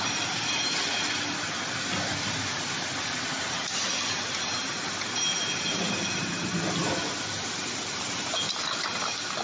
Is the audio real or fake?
real